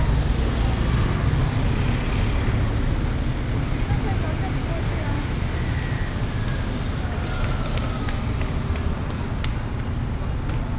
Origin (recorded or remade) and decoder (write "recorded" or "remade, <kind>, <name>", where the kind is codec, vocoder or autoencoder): recorded